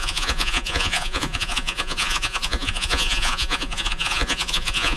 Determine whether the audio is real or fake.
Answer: fake